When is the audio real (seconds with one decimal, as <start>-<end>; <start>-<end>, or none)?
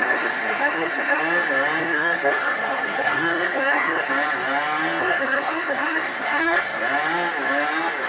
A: 1.2-1.8; 4.1-5.0; 6.8-8.1